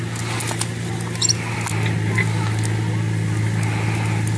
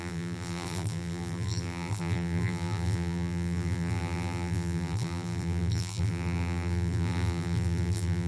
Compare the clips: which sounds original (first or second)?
first